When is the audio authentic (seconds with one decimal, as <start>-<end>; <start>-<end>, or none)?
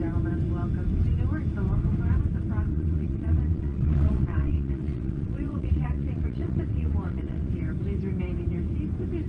0.0-2.7; 7.5-9.3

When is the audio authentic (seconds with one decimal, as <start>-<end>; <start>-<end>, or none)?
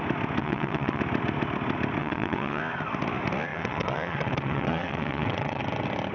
0.0-0.4; 1.0-2.0; 2.6-3.5; 5.6-6.1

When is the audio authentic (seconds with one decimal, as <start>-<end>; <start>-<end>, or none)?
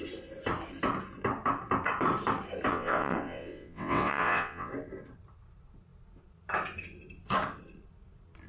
0.0-2.7; 4.7-8.5